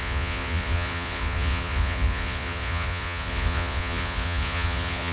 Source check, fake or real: fake